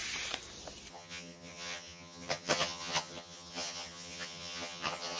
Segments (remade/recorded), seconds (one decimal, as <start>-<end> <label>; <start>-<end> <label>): 0.0-0.9 recorded; 0.9-5.2 remade